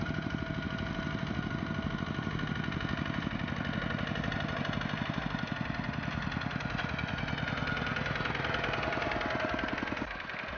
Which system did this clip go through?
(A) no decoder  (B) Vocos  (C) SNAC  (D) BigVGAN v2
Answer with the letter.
A